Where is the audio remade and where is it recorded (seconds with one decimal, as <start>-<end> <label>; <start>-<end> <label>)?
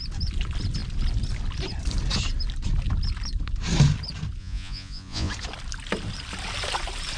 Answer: 0.0-4.4 recorded; 4.4-5.3 remade; 5.3-7.2 recorded